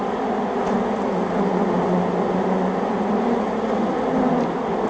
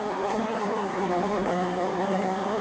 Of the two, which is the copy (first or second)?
second